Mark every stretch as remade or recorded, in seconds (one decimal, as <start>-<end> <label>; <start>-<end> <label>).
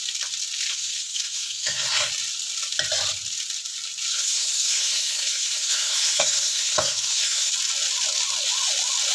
0.0-0.7 recorded; 0.7-2.1 remade; 2.1-4.1 recorded; 4.1-7.5 remade; 7.5-9.1 recorded